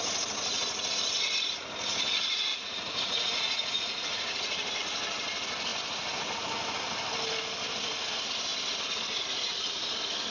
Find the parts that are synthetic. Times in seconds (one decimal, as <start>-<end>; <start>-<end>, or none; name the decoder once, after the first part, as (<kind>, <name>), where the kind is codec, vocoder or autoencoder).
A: 2.5-4.8 (vocoder, Vocos)